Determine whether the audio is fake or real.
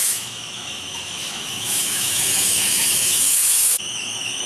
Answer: fake